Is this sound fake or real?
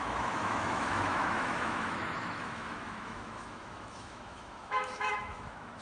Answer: fake